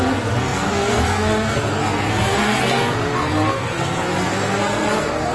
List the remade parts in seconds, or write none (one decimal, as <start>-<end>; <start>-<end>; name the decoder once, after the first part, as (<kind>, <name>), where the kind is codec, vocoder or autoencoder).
0.0-5.3 (codec, SNAC)